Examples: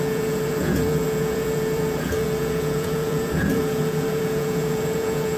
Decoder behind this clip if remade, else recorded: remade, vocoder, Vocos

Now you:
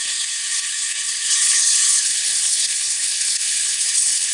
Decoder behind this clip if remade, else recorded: remade, codec, HILCodec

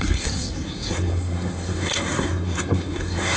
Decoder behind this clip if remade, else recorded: remade, codec, SNAC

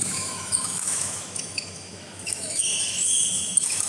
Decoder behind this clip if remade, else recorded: remade, autoencoder, DAC-VAE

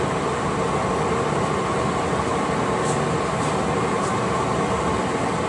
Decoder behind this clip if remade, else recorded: recorded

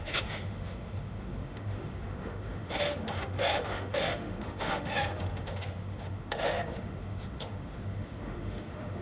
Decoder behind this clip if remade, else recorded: remade, autoencoder, DAC-VAE